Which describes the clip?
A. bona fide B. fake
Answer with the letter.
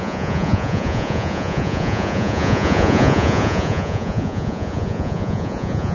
B